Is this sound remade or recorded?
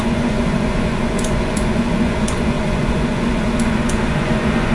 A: remade